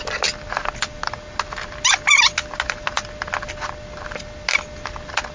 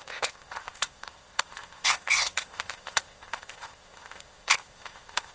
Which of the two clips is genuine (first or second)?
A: first